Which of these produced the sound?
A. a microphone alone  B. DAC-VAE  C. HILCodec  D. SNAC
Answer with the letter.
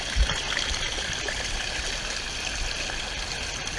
A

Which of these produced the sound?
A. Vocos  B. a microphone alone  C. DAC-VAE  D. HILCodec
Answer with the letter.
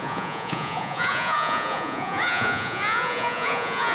A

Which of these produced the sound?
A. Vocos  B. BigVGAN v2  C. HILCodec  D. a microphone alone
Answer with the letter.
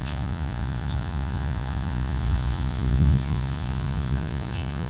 A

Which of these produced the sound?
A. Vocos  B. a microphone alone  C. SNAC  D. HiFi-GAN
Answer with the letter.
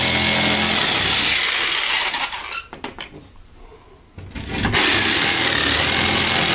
B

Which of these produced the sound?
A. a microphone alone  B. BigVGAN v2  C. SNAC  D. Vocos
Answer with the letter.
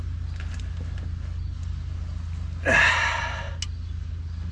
A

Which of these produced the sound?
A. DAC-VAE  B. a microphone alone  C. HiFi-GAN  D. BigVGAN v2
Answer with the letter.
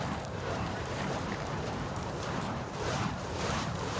D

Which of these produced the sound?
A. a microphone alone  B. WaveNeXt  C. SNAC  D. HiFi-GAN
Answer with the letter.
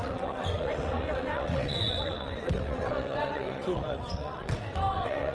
B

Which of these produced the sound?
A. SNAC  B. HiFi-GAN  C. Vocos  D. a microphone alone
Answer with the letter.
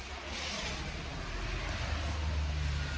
D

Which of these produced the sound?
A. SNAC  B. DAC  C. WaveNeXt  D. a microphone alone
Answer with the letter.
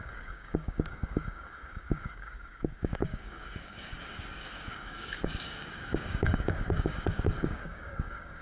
B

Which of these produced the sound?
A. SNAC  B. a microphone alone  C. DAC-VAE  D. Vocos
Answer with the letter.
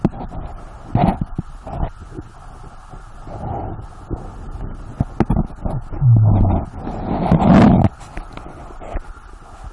B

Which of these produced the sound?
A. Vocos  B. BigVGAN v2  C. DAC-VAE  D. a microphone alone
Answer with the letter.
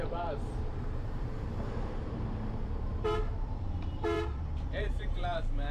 B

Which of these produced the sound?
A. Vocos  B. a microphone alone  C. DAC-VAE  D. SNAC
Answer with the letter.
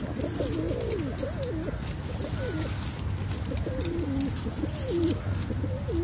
B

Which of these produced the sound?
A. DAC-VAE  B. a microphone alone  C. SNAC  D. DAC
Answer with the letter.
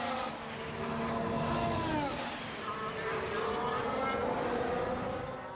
B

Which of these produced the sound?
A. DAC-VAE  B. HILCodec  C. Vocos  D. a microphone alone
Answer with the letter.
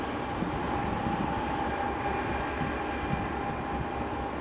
D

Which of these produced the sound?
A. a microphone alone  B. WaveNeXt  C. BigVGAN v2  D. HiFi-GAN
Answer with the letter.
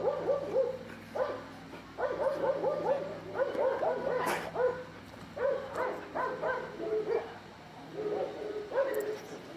A